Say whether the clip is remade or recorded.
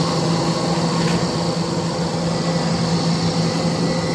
recorded